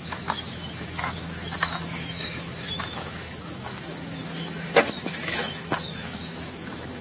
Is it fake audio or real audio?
fake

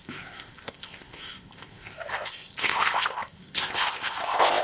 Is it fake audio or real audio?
fake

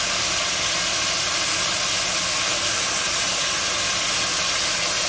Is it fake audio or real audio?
real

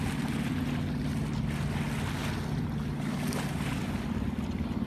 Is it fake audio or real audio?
real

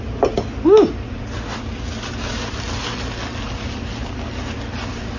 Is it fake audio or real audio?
real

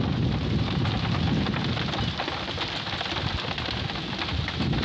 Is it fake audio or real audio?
real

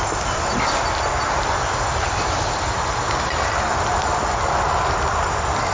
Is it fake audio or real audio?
real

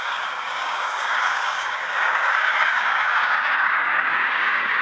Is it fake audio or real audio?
fake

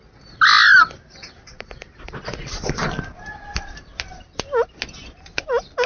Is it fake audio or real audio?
real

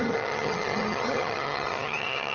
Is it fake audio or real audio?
fake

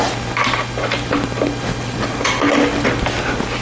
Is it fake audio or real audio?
real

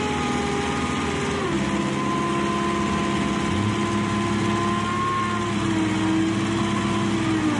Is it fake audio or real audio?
real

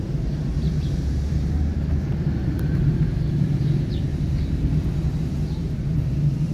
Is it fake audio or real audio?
fake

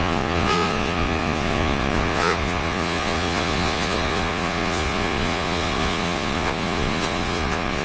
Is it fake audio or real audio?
fake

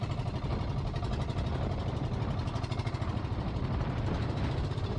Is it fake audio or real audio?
real